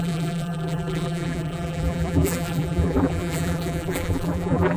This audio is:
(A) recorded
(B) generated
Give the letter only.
B